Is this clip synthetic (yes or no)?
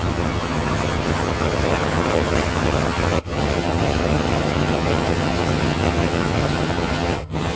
yes